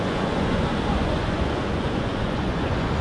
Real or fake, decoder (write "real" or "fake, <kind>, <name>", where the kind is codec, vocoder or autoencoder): fake, vocoder, Vocos